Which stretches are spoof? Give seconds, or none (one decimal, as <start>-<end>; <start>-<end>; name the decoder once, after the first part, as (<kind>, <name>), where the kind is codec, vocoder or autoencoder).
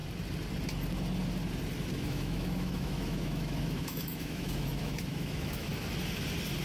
1.9-5.7 (autoencoder, DAC-VAE)